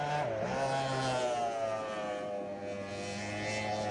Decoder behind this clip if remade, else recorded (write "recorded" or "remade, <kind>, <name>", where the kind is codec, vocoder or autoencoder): recorded